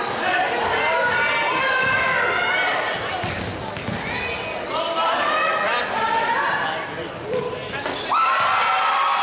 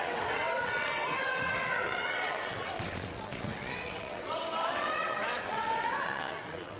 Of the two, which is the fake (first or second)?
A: second